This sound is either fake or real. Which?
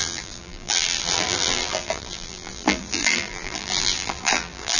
fake